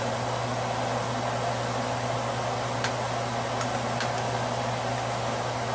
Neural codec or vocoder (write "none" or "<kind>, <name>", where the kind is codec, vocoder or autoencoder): none